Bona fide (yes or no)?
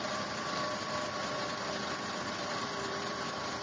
no